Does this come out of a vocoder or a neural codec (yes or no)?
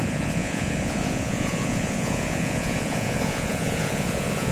yes